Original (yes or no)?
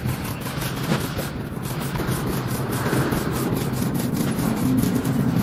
yes